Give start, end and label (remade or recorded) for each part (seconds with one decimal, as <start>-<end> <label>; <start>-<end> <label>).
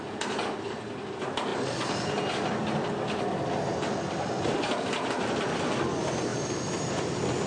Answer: 0.0-7.5 recorded